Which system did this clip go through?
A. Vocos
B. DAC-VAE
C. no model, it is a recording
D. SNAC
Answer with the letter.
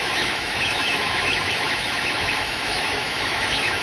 B